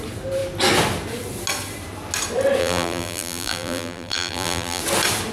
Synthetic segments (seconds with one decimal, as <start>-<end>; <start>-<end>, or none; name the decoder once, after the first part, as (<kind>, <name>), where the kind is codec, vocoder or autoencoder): 2.6-4.8 (vocoder, BigVGAN v2)